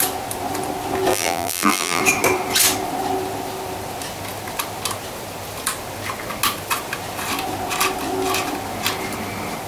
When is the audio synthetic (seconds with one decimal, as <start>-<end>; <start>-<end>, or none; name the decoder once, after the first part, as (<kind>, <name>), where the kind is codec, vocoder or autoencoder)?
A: 1.1-2.0 (vocoder, BigVGAN v2)